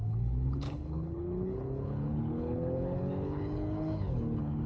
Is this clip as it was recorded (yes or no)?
no